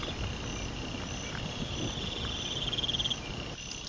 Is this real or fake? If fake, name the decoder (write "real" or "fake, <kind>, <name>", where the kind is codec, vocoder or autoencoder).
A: real